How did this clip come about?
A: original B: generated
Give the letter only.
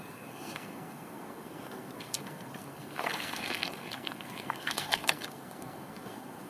B